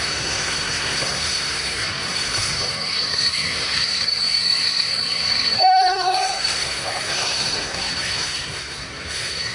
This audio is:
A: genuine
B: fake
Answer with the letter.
B